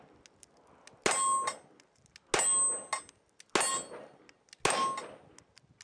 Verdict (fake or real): real